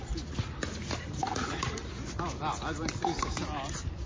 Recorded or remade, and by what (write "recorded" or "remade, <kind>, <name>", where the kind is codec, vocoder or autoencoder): recorded